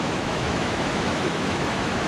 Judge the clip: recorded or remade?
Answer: remade